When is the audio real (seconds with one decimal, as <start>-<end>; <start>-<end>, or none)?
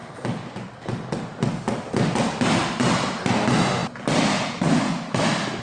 0.0-5.6